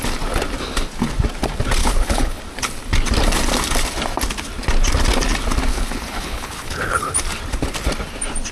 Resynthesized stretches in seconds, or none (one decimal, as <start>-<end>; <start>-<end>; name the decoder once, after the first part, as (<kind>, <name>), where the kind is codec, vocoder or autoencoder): 1.8-2.4 (codec, HILCodec); 5.7-7.1